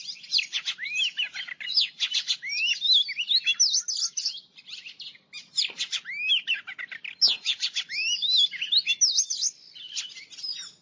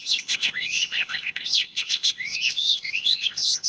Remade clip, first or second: second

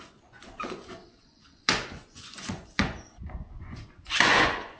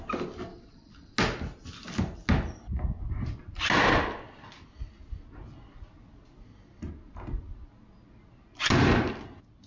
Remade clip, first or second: first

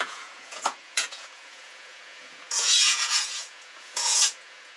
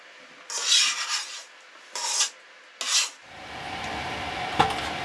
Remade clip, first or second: first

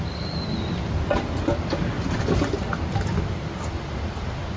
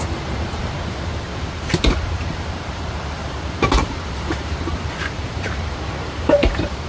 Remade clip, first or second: second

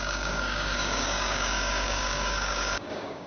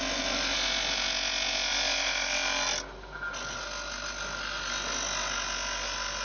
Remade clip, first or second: first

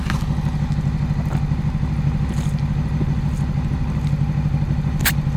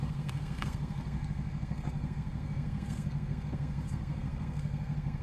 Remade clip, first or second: second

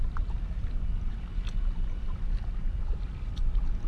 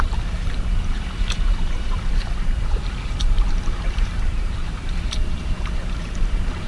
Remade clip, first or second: second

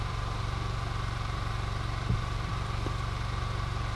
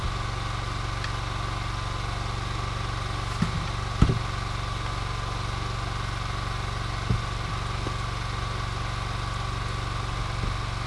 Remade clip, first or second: first